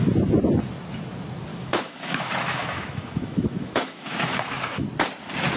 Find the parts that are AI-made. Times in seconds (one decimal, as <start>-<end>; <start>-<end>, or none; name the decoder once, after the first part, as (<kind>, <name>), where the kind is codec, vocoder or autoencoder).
1.5-4.9 (autoencoder, DAC-VAE)